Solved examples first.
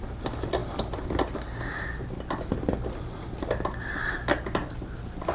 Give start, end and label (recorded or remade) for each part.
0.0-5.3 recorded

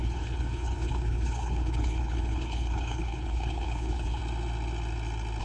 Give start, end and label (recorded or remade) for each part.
0.0-4.2 remade; 4.2-5.4 recorded

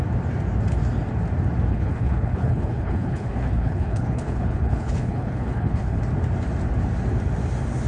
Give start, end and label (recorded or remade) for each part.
0.0-1.7 recorded; 1.7-6.0 remade; 6.0-7.9 recorded

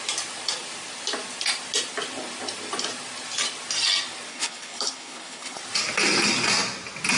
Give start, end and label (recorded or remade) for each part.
0.0-4.3 recorded; 4.3-5.6 remade; 5.6-7.2 recorded